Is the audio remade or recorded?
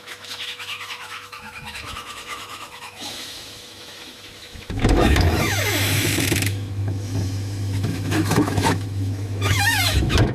remade